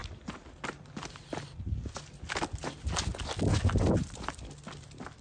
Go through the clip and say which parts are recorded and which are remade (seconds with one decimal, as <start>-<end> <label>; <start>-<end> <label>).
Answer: 0.0-5.2 recorded